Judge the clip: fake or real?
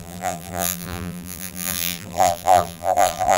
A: fake